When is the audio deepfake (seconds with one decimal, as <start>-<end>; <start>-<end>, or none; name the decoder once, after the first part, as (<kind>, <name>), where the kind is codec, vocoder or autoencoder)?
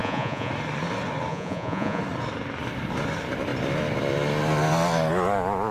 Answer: 0.0-0.5 (vocoder, Vocos); 1.3-2.0